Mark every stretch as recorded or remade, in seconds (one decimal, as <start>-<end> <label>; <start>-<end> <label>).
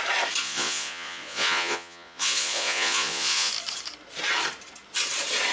0.0-0.4 recorded; 0.4-3.5 remade; 3.5-5.5 recorded